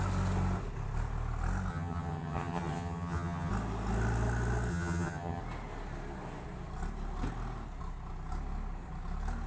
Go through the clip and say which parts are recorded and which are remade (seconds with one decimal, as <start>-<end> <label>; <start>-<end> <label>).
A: 0.0-1.7 recorded; 1.7-3.5 remade; 3.5-4.7 recorded; 4.7-5.4 remade; 5.4-9.5 recorded